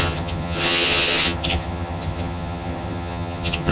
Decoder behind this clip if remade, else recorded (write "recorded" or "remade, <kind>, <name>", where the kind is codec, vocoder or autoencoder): remade, vocoder, HiFi-GAN